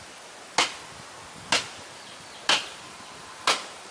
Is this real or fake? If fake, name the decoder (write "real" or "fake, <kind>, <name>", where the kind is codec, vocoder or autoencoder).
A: real